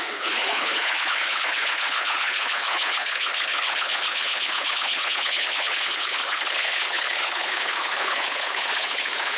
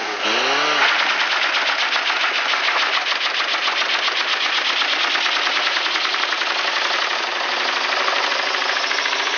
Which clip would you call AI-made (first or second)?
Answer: first